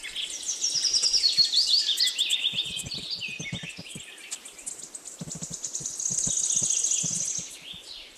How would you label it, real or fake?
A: real